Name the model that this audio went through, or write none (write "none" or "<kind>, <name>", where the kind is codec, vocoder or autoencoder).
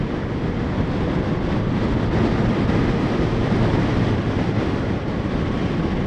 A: none